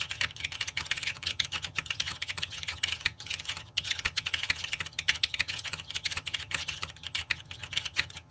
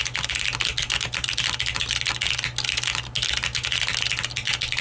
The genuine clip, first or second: second